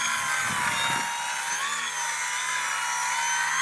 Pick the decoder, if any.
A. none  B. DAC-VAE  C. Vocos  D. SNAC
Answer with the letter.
A